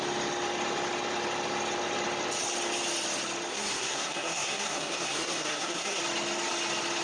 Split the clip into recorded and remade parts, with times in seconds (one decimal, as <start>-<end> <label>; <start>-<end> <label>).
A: 0.0-3.5 recorded; 3.5-6.0 remade; 6.0-7.0 recorded